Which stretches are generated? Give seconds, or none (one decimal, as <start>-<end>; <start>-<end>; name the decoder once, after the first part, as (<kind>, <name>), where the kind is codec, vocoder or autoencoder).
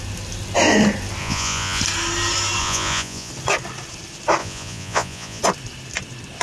1.2-1.8 (vocoder, Vocos); 2.6-3.3; 4.4-5.4